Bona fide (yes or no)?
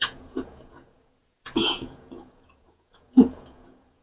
no